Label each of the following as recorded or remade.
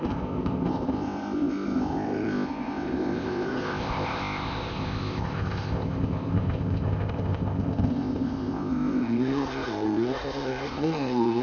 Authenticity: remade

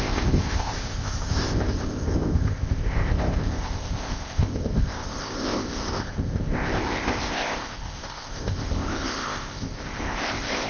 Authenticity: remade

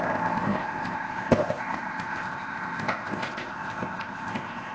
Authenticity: remade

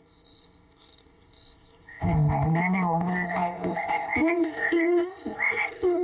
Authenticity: remade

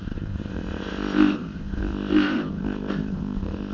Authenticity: remade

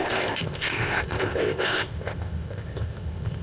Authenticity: remade